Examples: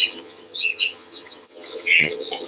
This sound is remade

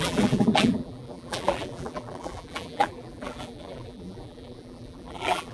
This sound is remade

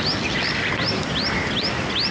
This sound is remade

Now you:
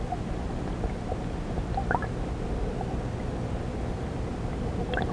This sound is recorded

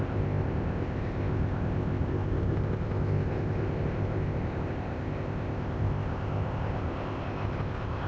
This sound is remade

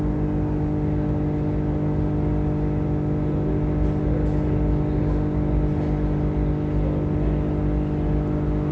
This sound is recorded